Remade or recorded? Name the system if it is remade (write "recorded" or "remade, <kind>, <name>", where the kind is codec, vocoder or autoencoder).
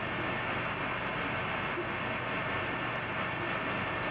recorded